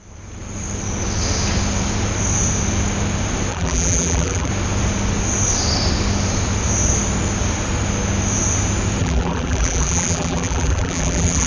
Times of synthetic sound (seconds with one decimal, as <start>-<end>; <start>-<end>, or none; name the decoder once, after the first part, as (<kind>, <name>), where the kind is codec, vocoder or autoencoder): 3.5-4.5 (vocoder, BigVGAN v2); 9.0-11.5

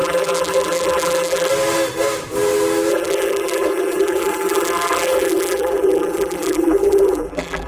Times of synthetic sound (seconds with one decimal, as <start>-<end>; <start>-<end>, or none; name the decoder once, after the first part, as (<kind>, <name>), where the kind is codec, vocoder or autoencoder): 0.0-1.5 (vocoder, BigVGAN v2); 2.9-7.7

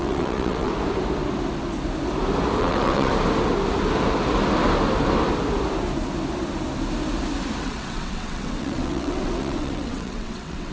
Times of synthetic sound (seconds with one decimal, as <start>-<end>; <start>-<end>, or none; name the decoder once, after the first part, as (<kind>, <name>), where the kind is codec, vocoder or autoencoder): 0.0-0.7 (vocoder, WaveNeXt); 2.6-3.1; 7.6-10.7

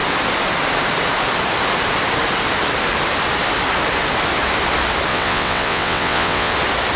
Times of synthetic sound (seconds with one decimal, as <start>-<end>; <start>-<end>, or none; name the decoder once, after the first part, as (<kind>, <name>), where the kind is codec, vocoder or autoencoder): 5.1-6.5 (vocoder, WaveNeXt)

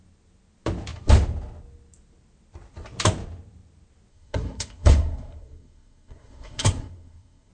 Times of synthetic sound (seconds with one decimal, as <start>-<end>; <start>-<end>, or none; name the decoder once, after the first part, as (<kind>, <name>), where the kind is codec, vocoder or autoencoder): 4.1-7.5 (codec, SNAC)

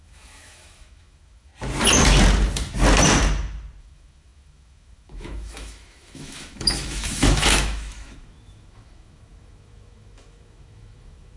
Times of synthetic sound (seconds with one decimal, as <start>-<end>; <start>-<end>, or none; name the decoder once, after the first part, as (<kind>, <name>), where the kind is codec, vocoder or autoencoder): 0.0-1.5 (autoencoder, DAC-VAE); 3.8-11.4